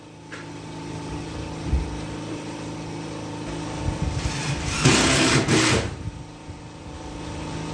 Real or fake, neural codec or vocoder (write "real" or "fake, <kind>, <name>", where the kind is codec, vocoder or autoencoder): real